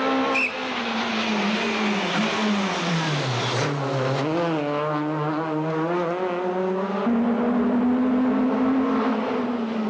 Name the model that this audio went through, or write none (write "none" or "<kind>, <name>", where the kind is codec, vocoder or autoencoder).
none